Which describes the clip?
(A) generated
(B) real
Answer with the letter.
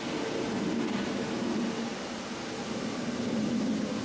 B